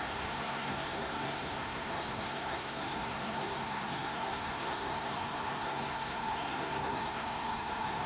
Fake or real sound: fake